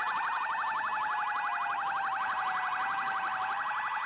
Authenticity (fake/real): real